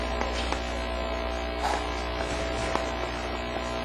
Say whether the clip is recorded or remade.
recorded